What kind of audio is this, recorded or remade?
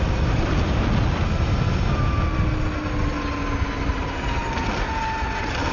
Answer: recorded